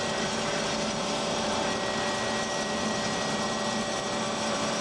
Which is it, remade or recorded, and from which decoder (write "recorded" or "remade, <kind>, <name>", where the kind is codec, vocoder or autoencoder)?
recorded